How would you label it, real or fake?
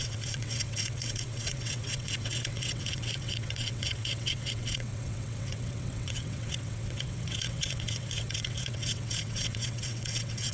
fake